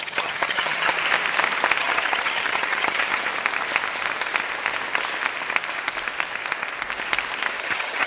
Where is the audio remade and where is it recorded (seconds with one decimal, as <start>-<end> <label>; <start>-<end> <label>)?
0.0-0.9 remade; 0.9-1.8 recorded; 1.8-3.3 remade; 3.3-7.6 recorded; 7.6-8.1 remade